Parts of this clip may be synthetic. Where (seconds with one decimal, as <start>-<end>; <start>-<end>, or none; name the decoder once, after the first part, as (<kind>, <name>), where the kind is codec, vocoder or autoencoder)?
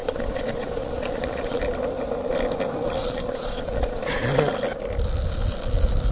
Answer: 0.0-1.6 (vocoder, Vocos); 3.0-4.2